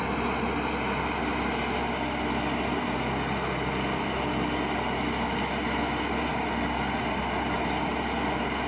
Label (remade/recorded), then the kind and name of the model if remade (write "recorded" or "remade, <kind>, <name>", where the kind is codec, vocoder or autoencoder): recorded